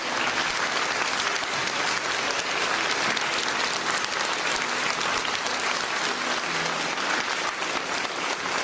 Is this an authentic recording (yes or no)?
yes